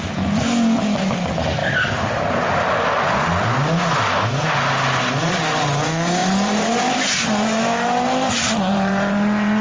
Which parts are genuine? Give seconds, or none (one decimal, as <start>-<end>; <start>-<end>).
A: 0.0-6.2